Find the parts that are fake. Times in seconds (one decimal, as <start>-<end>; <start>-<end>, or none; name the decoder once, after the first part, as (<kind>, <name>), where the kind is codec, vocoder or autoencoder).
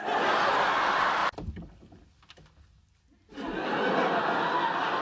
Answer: none